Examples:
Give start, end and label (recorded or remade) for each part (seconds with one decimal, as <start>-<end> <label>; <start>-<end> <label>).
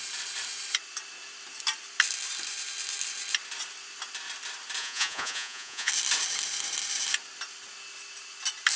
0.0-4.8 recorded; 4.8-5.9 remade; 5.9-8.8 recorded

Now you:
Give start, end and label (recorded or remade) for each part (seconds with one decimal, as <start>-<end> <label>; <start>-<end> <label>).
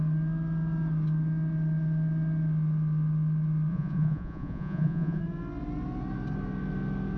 0.0-3.7 recorded; 3.7-5.2 remade; 5.2-7.2 recorded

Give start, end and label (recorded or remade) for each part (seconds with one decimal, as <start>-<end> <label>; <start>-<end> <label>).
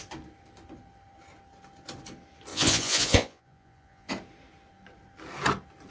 0.0-2.5 recorded; 2.5-4.1 remade; 4.1-5.9 recorded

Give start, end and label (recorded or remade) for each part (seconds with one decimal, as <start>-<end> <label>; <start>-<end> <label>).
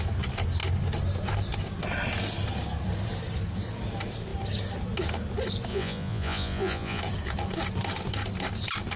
0.0-5.7 recorded; 5.7-7.0 remade; 7.0-9.0 recorded